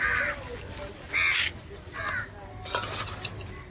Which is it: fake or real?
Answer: real